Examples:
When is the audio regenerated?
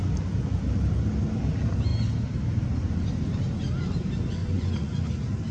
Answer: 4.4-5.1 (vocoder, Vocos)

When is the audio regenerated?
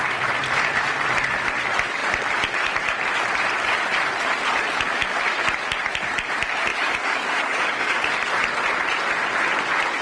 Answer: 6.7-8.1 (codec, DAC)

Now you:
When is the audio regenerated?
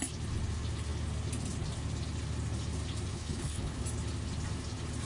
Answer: 3.1-3.8 (codec, HILCodec)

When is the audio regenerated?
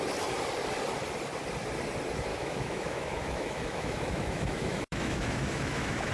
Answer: 2.3-6.1 (autoencoder, DAC-VAE)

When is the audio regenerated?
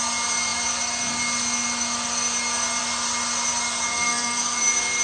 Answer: 3.9-4.6 (codec, SNAC)